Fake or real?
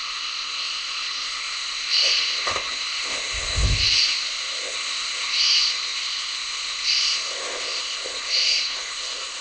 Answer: fake